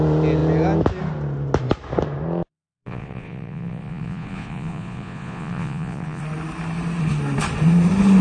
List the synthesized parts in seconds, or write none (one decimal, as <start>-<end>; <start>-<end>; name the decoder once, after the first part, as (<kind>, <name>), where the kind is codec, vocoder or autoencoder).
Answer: 2.5-6.2 (vocoder, Vocos)